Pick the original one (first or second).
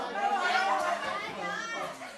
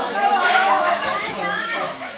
first